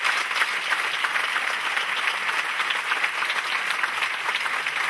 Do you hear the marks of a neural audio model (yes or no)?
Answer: no